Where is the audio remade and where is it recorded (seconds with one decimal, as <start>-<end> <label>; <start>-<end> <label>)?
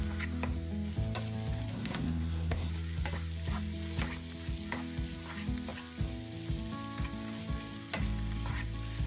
0.0-1.7 recorded; 1.7-2.7 remade; 2.7-9.1 recorded